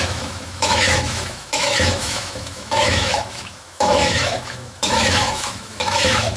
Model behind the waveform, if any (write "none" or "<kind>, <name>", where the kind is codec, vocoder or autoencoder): autoencoder, DAC-VAE